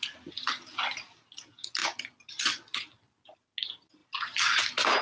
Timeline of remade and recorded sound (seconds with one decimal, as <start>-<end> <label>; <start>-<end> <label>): 0.0-5.0 recorded